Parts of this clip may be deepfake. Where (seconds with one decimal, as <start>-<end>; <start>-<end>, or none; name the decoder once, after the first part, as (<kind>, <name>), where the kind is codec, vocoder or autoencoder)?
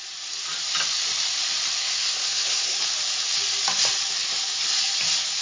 1.8-2.8 (codec, SNAC)